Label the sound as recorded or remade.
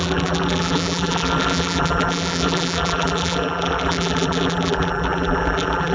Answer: remade